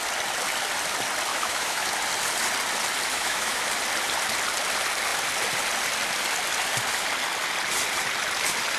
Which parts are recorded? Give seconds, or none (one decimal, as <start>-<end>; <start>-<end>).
0.0-1.3; 1.9-3.1; 3.7-8.8